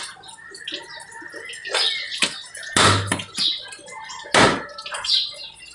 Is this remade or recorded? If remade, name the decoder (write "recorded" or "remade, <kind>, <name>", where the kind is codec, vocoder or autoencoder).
recorded